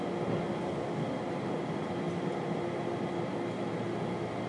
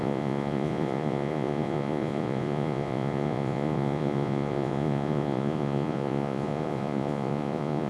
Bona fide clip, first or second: first